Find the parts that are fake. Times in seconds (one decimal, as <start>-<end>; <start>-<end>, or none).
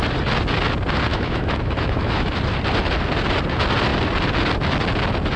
1.1-2.4